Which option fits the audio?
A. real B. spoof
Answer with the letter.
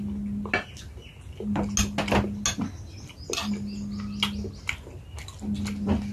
A